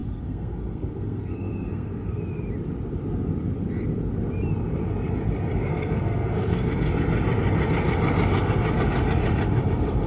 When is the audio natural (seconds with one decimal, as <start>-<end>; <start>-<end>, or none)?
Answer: 2.2-5.7; 6.7-10.1